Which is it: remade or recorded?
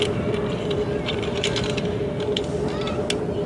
recorded